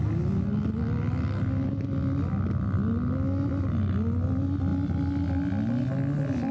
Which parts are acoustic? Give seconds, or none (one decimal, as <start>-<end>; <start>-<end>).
0.0-6.5

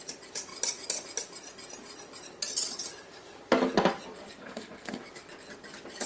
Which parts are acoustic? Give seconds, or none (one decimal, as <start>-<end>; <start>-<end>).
0.0-4.4; 5.0-6.1

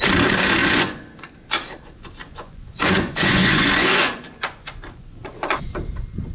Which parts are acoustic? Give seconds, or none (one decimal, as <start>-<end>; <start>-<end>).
0.0-0.6; 1.3-2.2; 5.7-6.3